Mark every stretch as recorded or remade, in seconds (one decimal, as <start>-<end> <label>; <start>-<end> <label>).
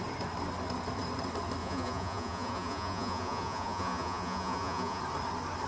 0.0-1.6 recorded; 1.6-5.0 remade; 5.0-5.7 recorded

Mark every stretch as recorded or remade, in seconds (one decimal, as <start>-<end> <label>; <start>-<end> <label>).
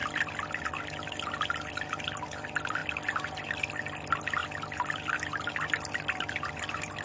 0.0-7.0 recorded